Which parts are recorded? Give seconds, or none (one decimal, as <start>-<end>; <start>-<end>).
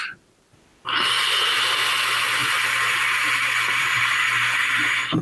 0.0-5.2